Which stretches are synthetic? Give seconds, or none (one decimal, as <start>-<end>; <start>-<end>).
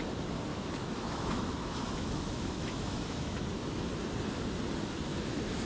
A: 0.5-3.9; 5.1-5.7